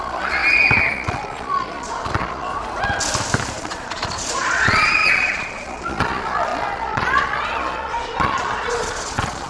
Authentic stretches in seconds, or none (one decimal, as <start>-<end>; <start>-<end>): 0.4-0.9; 2.5-3.6